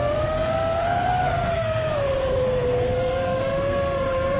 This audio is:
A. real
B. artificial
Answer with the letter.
B